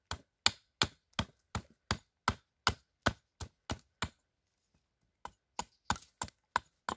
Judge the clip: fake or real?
real